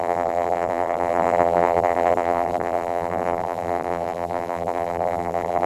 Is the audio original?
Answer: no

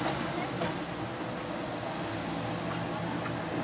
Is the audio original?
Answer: yes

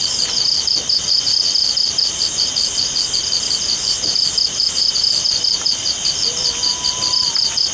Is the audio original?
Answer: no